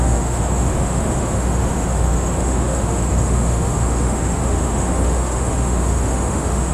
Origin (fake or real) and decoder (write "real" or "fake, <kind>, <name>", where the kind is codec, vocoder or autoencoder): fake, autoencoder, DAC-VAE